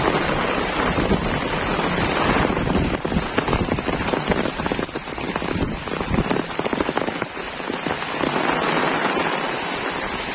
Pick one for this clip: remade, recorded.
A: remade